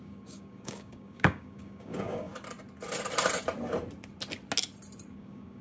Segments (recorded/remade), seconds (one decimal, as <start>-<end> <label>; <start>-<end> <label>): 0.0-2.3 remade; 2.3-5.1 recorded; 5.1-5.6 remade